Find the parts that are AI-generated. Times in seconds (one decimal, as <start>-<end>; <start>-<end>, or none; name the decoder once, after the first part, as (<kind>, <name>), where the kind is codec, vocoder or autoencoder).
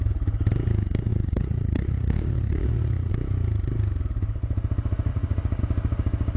1.1-3.1 (vocoder, Vocos); 5.1-5.6